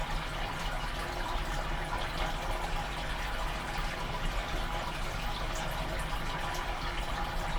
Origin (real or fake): real